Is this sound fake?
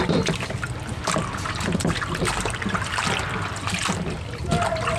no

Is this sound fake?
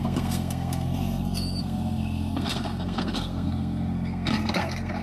yes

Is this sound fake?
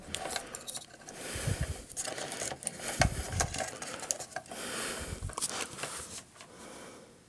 no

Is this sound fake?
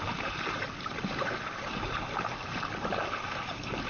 no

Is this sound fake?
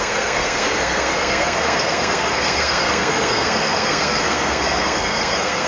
yes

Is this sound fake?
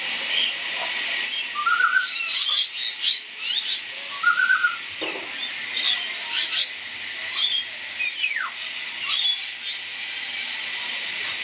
no